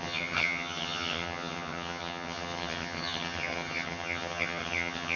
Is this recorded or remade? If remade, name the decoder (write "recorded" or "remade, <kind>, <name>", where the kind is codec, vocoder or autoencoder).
remade, vocoder, HiFi-GAN